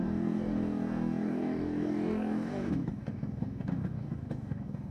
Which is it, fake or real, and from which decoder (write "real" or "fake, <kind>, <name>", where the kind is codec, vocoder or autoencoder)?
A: fake, codec, DAC